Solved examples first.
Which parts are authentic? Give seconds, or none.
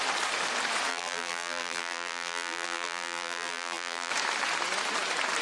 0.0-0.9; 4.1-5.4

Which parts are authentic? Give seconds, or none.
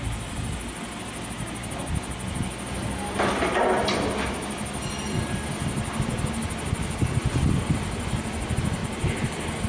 0.0-9.7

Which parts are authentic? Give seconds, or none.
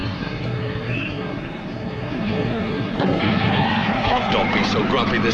4.3-5.3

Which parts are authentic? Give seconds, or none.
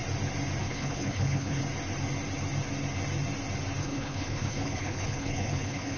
0.0-0.6; 1.6-3.8